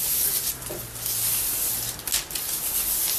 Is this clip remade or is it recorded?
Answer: recorded